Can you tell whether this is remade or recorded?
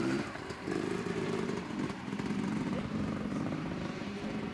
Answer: remade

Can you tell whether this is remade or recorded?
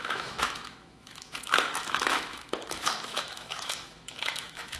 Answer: remade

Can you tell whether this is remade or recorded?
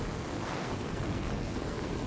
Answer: remade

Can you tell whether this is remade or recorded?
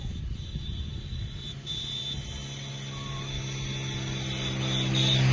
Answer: recorded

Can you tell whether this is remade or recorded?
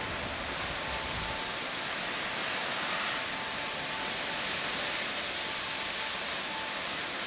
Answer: recorded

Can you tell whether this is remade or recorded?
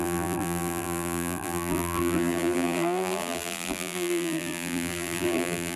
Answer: remade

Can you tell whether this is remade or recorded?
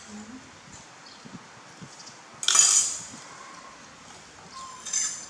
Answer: recorded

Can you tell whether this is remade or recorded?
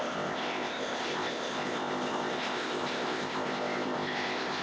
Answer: remade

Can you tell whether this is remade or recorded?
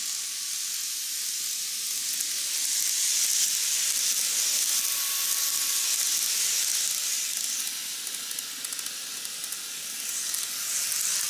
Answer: recorded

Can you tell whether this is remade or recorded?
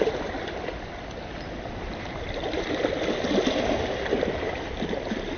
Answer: recorded